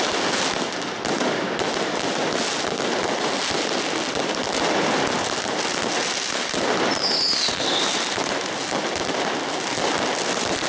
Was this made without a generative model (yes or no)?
yes